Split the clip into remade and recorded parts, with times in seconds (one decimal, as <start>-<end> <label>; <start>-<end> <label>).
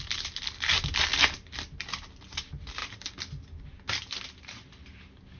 0.0-5.4 recorded